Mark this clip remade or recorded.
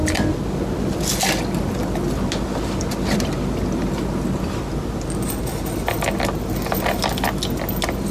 recorded